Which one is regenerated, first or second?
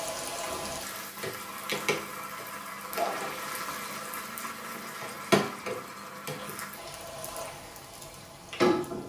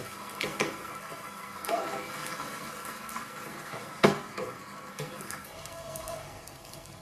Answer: second